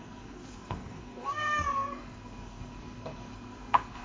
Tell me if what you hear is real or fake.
fake